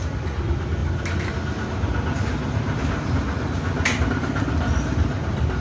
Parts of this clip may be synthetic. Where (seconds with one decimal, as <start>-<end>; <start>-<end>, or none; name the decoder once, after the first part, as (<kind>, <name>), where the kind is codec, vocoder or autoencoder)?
none